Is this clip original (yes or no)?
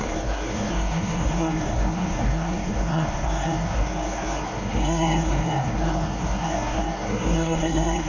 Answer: no